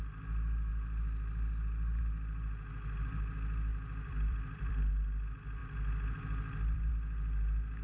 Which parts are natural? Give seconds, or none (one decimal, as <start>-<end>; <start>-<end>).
0.0-0.7; 2.0-3.7; 4.9-5.6; 6.9-7.8